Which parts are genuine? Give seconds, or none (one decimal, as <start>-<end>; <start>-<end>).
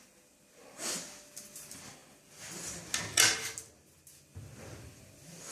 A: 0.0-5.5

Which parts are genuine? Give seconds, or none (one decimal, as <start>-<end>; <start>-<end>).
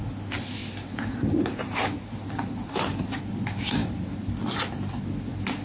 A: 0.0-0.6; 3.2-3.8; 4.3-5.6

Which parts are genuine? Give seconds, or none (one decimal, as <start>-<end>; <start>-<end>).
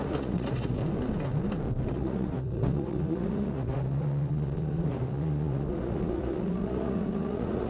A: 0.8-1.9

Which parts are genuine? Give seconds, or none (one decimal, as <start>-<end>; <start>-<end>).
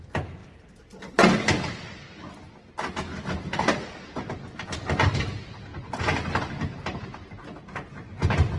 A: 0.0-8.6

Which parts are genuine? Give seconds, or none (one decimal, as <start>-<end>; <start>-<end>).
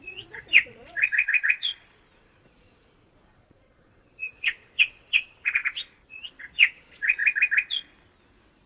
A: 7.2-8.7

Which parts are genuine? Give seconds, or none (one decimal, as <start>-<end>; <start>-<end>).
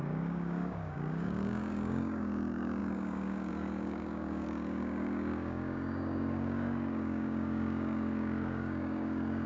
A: none